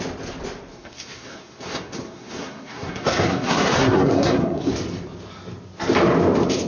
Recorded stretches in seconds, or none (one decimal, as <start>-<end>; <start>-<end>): 0.0-0.7; 4.7-6.7